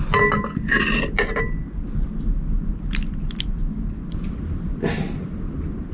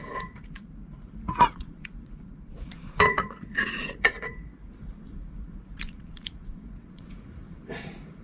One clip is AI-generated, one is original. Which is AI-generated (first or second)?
second